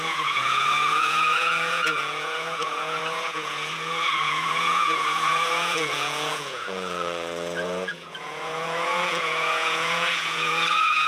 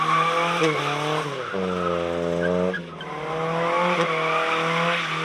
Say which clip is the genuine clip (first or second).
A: second